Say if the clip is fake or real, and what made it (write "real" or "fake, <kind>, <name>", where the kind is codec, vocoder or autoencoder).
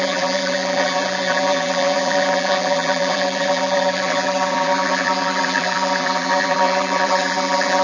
fake, vocoder, BigVGAN v2